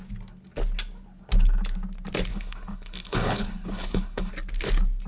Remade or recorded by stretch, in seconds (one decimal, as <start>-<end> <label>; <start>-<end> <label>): 0.0-2.3 recorded; 2.3-4.3 remade; 4.3-5.1 recorded